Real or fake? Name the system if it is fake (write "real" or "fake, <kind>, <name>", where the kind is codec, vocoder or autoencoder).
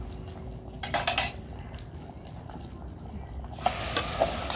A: real